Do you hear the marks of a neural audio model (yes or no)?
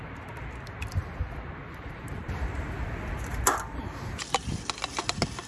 no